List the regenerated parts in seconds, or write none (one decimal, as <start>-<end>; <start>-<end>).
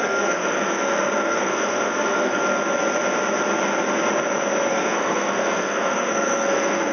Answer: 0.0-2.4; 4.7-6.9